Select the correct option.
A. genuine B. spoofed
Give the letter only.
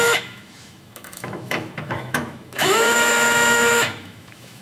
B